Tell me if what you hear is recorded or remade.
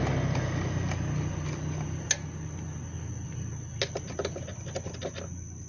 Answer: recorded